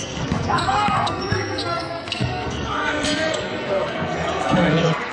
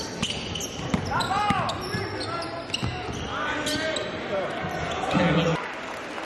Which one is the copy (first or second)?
first